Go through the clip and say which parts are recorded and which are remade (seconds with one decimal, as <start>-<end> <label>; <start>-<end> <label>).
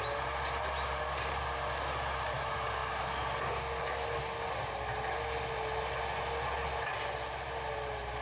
0.0-8.2 recorded